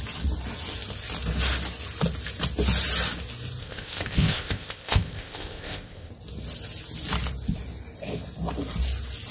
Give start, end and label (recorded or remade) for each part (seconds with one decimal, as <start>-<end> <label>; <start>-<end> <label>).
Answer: 0.0-3.6 recorded; 3.6-6.1 remade; 6.1-9.3 recorded